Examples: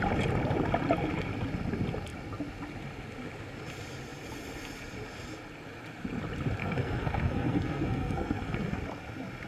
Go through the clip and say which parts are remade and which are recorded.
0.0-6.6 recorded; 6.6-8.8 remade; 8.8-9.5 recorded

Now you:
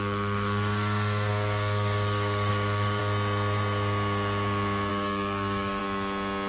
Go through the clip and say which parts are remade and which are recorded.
0.0-3.0 remade; 3.0-4.9 recorded; 4.9-5.8 remade; 5.8-6.5 recorded

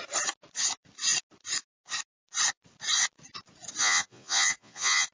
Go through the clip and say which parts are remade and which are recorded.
0.0-3.8 recorded; 3.8-5.1 remade

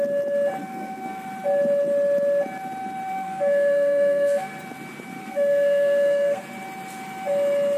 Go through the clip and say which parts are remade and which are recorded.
0.0-0.6 recorded; 0.6-1.3 remade; 1.3-3.1 recorded; 3.1-4.5 remade; 4.5-5.2 recorded; 5.2-6.4 remade; 6.4-7.8 recorded

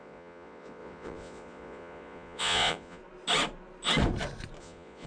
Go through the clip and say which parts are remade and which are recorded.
0.0-3.0 remade; 3.0-4.6 recorded; 4.6-5.1 remade